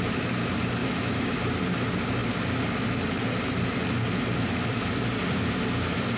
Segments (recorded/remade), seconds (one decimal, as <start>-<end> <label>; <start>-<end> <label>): 0.0-0.8 recorded; 0.8-1.4 remade; 1.4-6.2 recorded